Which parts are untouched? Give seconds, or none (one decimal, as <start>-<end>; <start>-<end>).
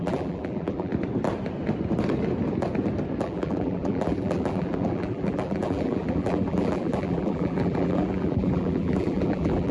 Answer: 0.9-3.2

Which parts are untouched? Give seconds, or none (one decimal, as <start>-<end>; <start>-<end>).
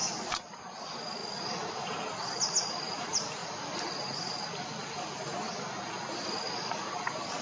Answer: 0.6-7.4